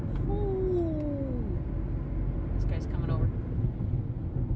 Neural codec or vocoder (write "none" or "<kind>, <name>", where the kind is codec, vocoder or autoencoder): none